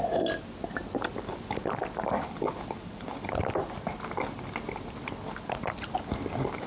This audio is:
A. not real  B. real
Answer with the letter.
B